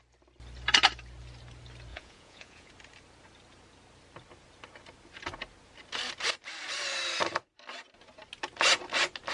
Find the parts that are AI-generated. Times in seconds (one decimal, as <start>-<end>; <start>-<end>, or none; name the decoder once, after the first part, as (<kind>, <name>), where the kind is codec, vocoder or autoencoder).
1.9-2.7 (vocoder, Vocos)